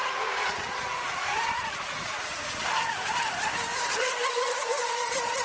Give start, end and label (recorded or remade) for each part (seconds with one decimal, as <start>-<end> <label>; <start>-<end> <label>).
0.0-2.8 remade; 2.8-5.4 recorded